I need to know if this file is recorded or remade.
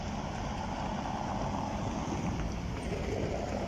recorded